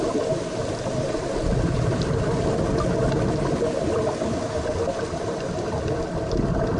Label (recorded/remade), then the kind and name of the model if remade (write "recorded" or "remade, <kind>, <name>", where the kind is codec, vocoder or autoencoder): recorded